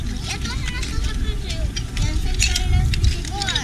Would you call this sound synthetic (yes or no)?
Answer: no